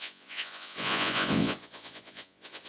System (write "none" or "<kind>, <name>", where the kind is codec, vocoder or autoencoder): vocoder, Vocos